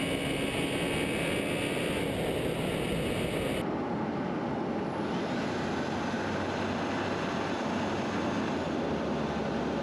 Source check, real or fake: real